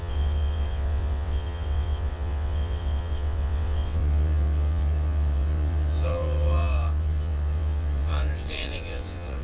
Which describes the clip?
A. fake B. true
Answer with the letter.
A